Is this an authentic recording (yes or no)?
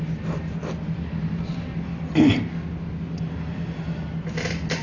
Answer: yes